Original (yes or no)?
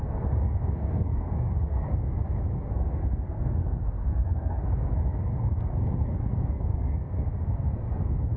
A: no